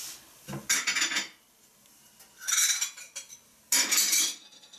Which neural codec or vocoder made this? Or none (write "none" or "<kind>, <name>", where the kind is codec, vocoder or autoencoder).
none